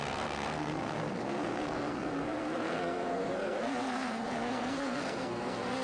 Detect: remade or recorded remade